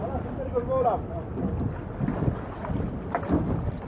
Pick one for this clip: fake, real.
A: real